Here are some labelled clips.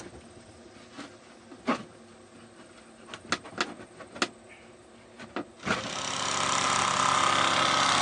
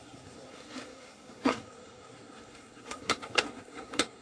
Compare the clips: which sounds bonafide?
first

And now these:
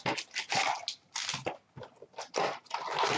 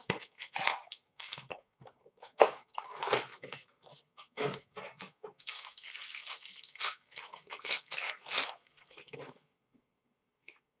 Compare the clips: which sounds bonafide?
first